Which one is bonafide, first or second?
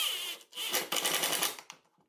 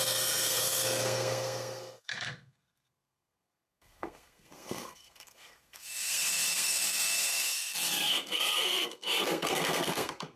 first